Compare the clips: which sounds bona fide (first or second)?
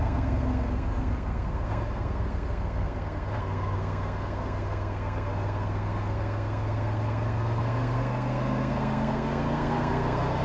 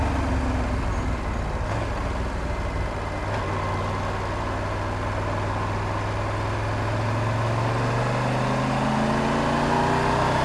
second